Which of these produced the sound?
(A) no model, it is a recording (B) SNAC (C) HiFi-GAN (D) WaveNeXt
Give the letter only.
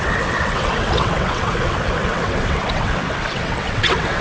D